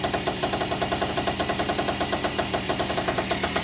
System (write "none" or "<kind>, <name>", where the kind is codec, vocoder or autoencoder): none